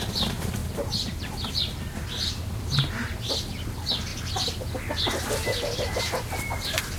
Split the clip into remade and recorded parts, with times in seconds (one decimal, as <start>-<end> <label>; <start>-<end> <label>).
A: 0.0-4.1 remade; 4.1-6.0 recorded; 6.0-7.0 remade